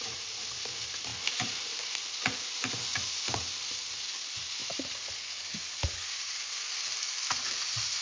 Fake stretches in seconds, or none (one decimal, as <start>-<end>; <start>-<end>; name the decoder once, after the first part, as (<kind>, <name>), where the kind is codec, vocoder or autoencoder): none